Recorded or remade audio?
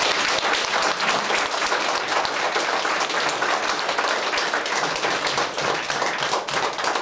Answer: recorded